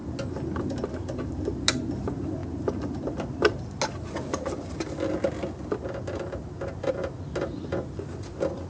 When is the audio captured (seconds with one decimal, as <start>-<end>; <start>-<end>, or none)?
0.0-8.7